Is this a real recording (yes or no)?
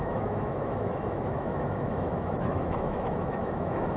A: no